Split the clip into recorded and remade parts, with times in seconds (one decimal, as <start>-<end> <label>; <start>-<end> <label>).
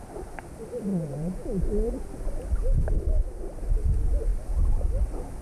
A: 0.0-0.9 recorded; 0.9-1.7 remade; 1.7-5.4 recorded